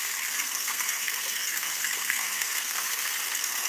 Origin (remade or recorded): remade